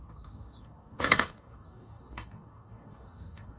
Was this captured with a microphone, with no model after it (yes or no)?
no